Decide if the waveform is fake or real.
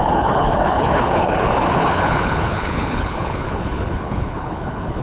fake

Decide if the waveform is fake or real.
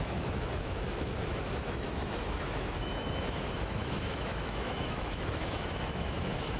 fake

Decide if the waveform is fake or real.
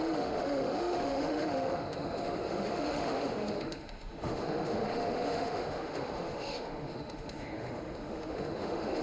fake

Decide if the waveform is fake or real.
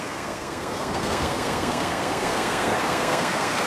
fake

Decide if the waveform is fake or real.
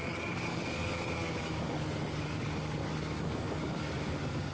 fake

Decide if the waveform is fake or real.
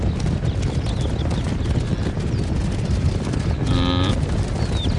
real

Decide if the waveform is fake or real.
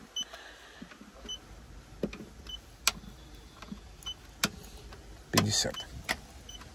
real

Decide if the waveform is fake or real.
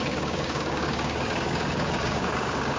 fake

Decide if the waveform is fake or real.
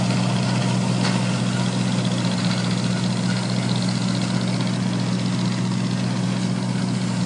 real